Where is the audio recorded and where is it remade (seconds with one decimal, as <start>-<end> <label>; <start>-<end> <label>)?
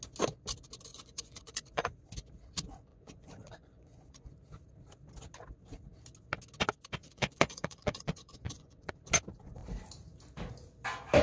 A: 0.0-0.9 recorded; 0.9-1.8 remade; 1.8-2.9 recorded; 2.9-4.3 remade; 4.3-7.0 recorded; 7.0-8.9 remade; 8.9-11.2 recorded